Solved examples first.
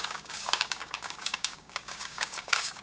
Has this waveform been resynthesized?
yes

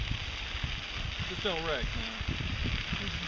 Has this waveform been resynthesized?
no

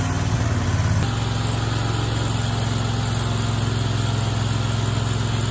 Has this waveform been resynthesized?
no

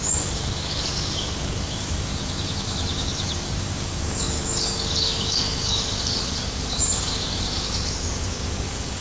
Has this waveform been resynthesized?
yes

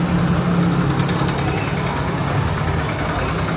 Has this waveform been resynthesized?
no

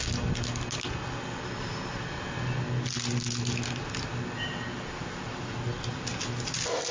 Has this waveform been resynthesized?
no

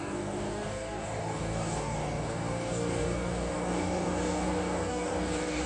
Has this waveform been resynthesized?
yes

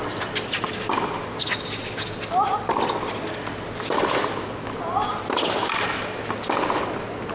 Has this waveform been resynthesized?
no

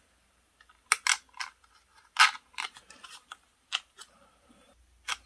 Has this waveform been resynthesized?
no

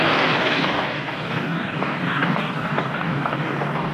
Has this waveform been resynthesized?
yes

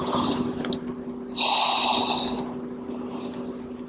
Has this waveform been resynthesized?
no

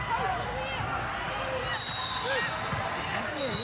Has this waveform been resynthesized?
no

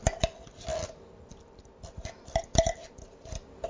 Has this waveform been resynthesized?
no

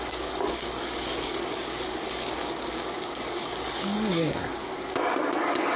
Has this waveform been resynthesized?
yes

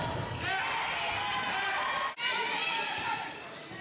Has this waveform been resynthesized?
no